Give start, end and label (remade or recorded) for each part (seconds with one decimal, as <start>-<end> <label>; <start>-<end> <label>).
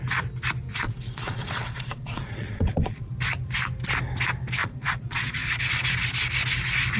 0.0-0.7 recorded; 0.7-3.1 remade; 3.1-4.6 recorded; 4.6-5.6 remade; 5.6-7.0 recorded